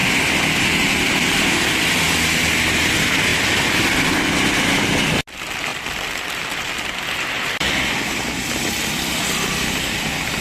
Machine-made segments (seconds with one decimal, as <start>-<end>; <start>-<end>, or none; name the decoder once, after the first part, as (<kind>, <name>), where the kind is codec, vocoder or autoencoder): 5.7-9.1 (vocoder, BigVGAN v2)